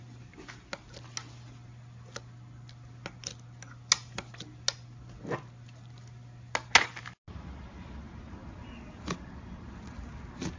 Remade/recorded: recorded